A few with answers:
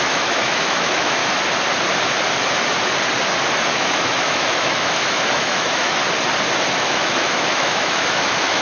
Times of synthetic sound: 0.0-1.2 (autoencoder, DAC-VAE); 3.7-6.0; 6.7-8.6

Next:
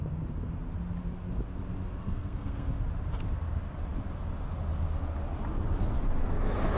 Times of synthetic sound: 2.0-2.7 (codec, SNAC)

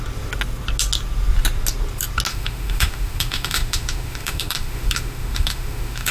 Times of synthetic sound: 2.3-6.1 (autoencoder, DAC-VAE)

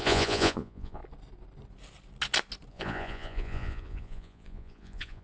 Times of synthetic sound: 0.0-1.0 (vocoder, Vocos); 2.7-5.2

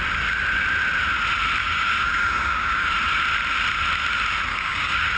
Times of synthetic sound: 1.6-2.9 (codec, DAC); 4.5-5.2

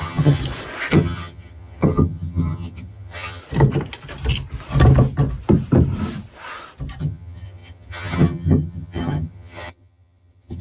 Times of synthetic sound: 0.0-0.4 (vocoder, HiFi-GAN); 0.9-3.4; 7.0-10.6

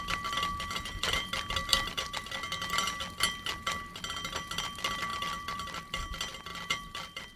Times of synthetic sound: 1.7-2.3 (vocoder, BigVGAN v2); 5.1-6.0; 6.5-7.4